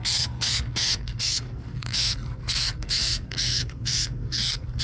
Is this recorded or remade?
remade